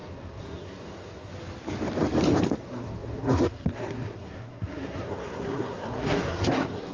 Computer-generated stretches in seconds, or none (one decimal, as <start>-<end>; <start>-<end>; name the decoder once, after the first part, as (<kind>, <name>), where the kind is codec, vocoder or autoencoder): 0.0-1.3 (codec, SNAC); 2.6-6.9